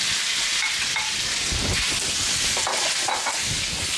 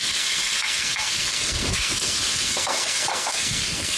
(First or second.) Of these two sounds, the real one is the first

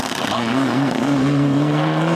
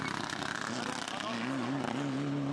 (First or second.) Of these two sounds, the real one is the second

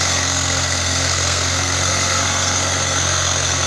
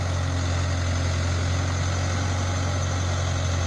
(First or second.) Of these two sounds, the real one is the second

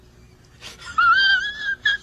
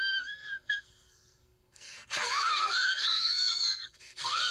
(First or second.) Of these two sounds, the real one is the first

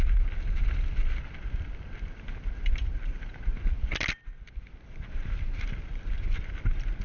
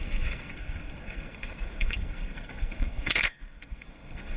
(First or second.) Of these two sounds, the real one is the first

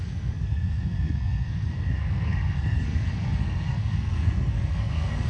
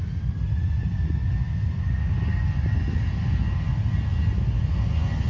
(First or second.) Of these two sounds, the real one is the second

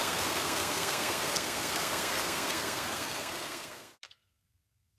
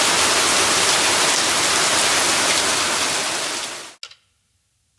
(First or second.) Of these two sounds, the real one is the second